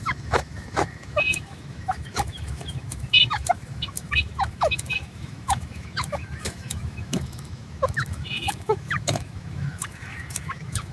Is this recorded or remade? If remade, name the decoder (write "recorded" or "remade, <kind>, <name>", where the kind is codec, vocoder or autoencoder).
remade, autoencoder, DAC-VAE